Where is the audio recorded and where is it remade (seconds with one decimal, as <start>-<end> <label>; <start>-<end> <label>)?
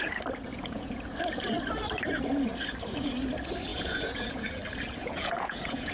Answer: 0.0-0.5 recorded; 0.5-1.0 remade; 1.0-3.7 recorded; 3.7-4.5 remade; 4.5-5.0 recorded; 5.0-5.9 remade